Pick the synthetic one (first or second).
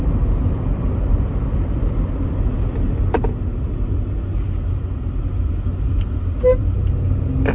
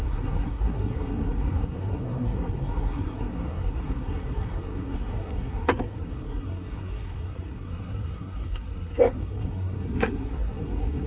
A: second